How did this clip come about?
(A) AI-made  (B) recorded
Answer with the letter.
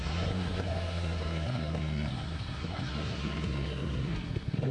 A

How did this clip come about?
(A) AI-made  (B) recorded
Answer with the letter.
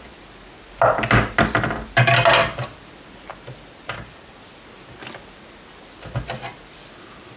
B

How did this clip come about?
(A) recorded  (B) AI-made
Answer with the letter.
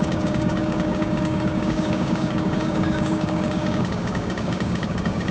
B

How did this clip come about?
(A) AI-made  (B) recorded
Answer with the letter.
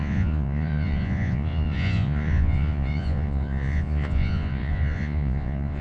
A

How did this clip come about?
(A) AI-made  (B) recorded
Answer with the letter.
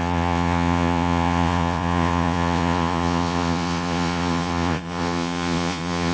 A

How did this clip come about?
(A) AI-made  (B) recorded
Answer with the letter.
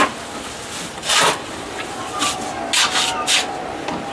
B